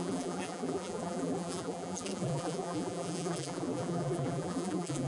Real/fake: fake